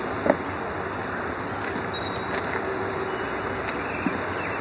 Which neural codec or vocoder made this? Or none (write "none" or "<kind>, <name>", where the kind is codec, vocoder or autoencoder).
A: none